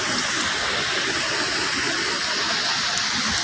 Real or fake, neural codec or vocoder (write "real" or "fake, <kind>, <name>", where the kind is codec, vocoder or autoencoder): real